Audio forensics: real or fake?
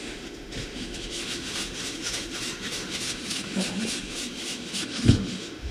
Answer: fake